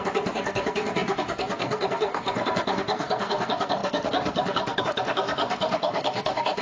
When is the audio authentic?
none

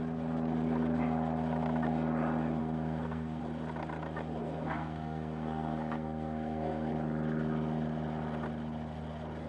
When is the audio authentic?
0.0-2.6; 3.4-4.4; 6.9-9.5

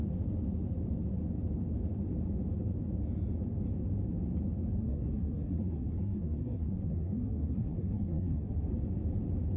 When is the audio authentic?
0.0-4.7; 8.7-9.6

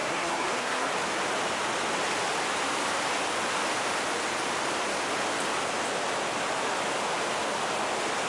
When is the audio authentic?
0.9-8.3